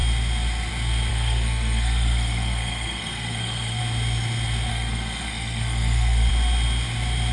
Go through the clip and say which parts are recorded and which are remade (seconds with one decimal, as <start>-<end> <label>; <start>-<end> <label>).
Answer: 0.0-1.1 recorded; 1.1-3.8 remade; 3.8-4.7 recorded; 4.7-6.3 remade; 6.3-7.3 recorded